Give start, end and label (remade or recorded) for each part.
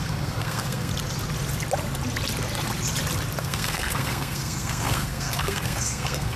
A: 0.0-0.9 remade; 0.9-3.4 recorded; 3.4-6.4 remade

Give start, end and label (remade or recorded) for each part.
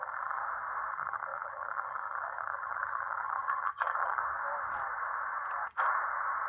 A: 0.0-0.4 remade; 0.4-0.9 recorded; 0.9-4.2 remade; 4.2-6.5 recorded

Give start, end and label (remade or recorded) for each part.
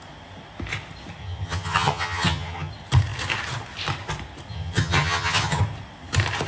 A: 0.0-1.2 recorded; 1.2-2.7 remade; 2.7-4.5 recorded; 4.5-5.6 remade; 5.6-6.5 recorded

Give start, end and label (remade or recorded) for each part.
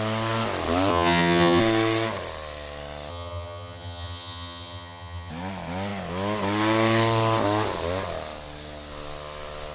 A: 0.0-0.9 recorded; 0.9-1.6 remade; 1.6-3.1 recorded; 3.1-5.3 remade; 5.3-9.7 recorded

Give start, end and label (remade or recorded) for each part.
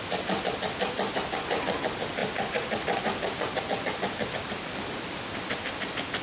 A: 0.0-6.2 recorded